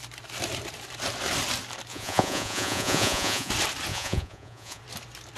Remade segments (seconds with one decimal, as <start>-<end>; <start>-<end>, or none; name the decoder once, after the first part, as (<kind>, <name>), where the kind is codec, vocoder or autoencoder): 1.9-3.5 (vocoder, Vocos); 3.9-4.8